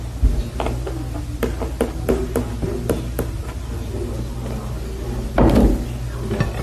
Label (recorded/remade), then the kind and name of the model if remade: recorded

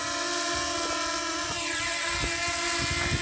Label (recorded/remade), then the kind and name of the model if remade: recorded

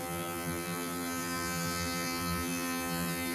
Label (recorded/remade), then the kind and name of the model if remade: remade, vocoder, BigVGAN v2